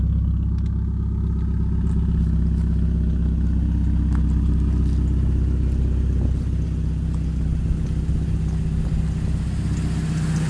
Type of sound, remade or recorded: recorded